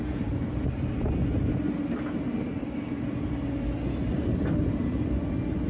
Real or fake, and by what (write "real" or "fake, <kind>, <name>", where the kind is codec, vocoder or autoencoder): real